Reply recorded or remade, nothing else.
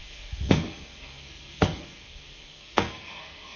remade